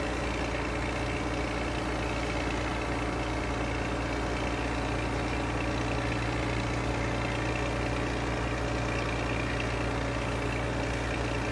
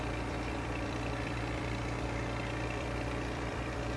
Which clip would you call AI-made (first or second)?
second